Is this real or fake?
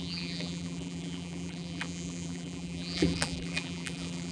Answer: fake